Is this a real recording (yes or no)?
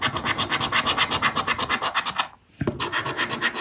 yes